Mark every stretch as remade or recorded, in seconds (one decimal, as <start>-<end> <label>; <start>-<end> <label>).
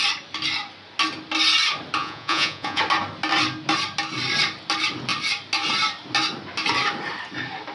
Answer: 0.0-2.0 recorded; 2.0-2.8 remade; 2.8-7.7 recorded